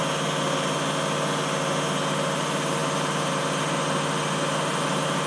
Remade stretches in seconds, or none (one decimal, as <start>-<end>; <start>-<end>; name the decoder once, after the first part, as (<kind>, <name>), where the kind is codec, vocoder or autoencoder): none